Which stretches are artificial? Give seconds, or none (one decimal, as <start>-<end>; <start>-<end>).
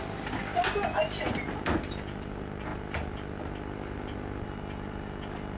none